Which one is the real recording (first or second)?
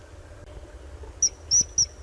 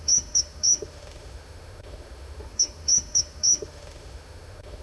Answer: first